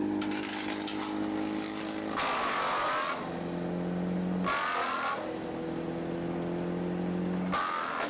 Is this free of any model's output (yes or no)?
yes